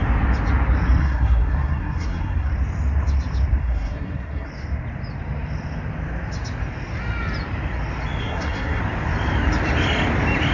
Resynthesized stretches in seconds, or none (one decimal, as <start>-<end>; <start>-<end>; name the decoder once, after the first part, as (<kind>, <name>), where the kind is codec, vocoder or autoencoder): 1.0-2.5 (codec, SNAC); 3.6-4.5; 8.2-8.8